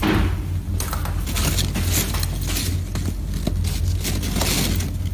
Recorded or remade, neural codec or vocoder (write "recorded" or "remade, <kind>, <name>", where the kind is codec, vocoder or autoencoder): recorded